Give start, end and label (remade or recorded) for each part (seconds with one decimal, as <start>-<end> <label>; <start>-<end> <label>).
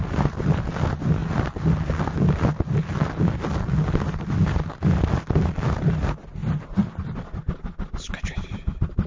0.0-9.1 recorded